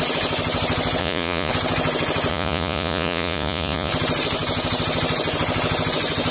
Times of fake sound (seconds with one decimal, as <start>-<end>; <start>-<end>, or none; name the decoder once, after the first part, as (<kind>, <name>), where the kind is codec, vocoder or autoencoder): 1.0-1.5 (vocoder, Vocos); 2.3-3.9